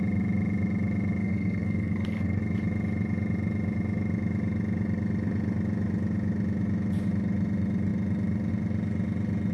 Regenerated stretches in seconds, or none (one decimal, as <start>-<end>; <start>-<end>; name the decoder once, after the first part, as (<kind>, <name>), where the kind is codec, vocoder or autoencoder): 1.2-2.4 (codec, SNAC)